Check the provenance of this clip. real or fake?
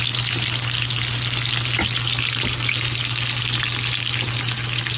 real